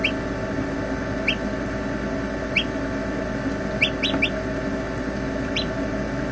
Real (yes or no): yes